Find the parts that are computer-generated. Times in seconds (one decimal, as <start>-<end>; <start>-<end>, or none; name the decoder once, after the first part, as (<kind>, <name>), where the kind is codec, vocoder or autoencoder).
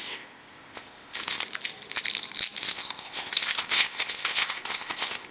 0.0-1.4 (codec, ZipCodec); 2.6-5.3